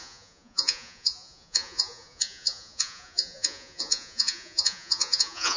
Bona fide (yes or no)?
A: no